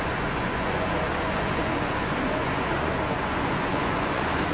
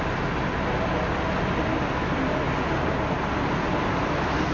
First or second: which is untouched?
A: second